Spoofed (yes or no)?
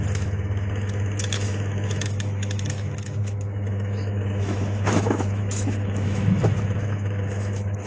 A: yes